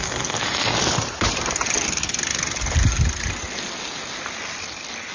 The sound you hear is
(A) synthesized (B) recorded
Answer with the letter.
B